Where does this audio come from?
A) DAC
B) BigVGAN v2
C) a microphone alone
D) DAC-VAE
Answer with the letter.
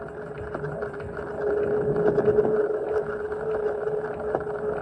C